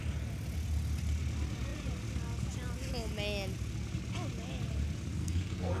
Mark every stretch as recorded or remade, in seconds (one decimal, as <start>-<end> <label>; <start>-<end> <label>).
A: 0.0-5.2 recorded; 5.2-5.8 remade